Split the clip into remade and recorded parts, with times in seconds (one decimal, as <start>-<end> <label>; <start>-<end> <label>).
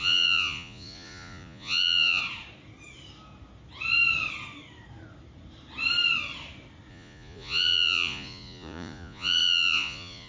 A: 0.0-2.2 remade; 2.2-6.9 recorded; 6.9-10.3 remade